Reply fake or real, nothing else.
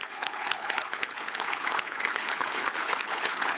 fake